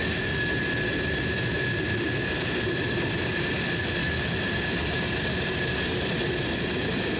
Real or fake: real